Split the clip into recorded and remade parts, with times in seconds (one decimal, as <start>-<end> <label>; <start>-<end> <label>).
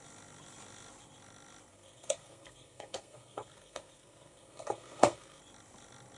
0.0-1.7 recorded; 1.7-5.4 remade; 5.4-6.2 recorded